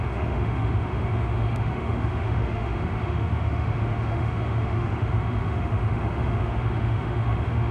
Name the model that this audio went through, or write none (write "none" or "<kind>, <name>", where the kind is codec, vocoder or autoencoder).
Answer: autoencoder, DAC-VAE